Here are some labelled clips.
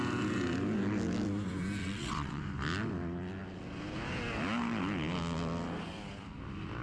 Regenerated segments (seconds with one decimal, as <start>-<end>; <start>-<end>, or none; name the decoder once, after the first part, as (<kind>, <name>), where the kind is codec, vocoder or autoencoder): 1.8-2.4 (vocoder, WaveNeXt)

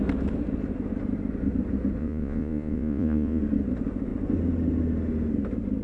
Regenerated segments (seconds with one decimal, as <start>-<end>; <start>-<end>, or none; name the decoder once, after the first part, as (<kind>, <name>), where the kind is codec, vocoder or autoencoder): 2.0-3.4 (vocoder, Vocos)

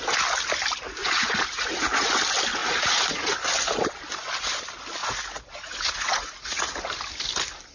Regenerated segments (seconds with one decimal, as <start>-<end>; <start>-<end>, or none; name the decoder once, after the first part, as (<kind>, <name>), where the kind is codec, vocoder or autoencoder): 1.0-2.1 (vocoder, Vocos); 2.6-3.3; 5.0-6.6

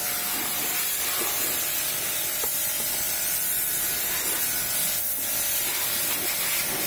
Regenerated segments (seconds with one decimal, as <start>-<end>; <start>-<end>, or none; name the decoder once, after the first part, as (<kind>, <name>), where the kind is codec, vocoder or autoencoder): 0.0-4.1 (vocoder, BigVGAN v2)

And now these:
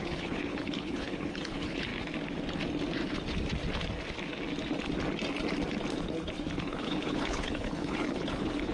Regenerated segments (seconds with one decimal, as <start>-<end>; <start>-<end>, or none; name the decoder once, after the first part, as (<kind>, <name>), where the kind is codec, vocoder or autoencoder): 0.0-1.9 (codec, HILCodec); 6.6-8.7

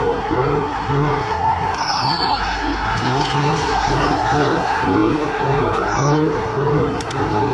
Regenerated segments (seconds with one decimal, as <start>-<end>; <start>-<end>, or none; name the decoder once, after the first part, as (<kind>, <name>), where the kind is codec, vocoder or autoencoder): 0.0-7.5 (codec, SNAC)